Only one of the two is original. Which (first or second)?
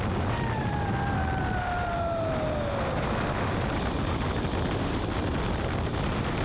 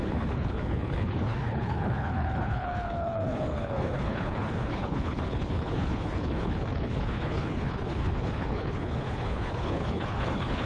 first